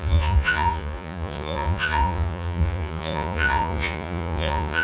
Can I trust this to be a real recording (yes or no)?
no